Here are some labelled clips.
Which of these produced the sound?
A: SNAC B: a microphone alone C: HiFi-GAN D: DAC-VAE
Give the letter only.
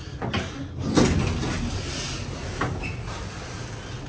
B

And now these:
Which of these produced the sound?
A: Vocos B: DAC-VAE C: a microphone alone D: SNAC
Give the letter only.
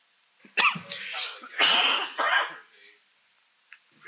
C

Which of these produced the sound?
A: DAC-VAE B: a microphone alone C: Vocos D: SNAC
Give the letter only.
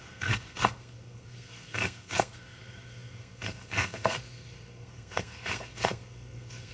D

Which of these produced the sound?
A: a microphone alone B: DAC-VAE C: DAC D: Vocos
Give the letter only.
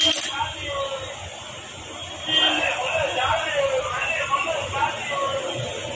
A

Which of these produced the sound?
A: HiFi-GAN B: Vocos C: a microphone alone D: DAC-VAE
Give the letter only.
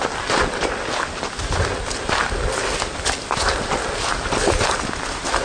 C